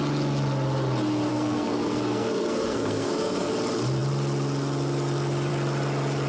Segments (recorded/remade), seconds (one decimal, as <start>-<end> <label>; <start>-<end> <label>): 0.0-1.3 recorded; 1.3-3.5 remade; 3.5-6.3 recorded